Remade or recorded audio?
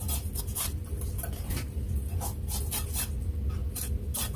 recorded